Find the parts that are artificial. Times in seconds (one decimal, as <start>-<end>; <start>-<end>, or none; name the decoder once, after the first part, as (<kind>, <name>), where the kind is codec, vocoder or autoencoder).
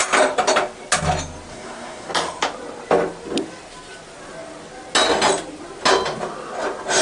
1.5-2.1 (codec, SNAC)